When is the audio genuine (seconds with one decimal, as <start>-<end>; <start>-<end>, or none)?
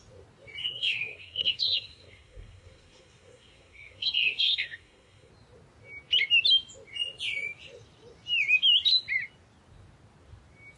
0.0-0.6; 5.3-10.8